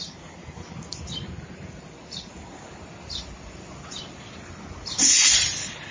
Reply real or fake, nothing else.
real